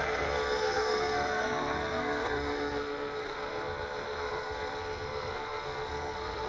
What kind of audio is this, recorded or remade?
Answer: remade